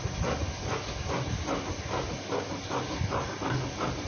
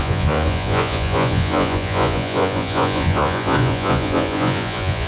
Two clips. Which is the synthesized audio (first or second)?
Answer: second